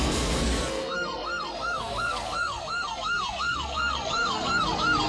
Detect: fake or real fake